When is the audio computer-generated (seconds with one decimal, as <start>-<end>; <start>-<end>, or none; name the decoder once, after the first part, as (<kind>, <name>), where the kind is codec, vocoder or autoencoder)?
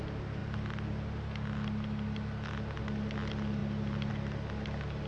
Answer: none